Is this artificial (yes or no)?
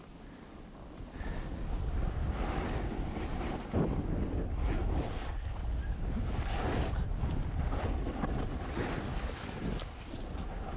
no